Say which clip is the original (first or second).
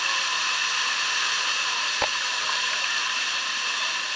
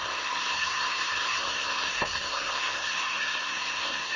first